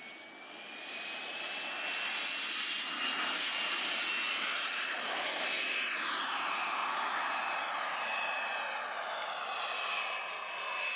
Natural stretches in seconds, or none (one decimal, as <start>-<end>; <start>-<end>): 0.0-4.5; 5.1-11.0